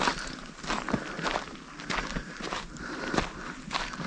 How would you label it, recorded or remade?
recorded